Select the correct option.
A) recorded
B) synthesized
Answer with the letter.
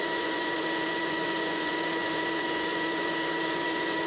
B